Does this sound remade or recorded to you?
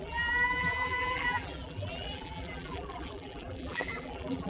remade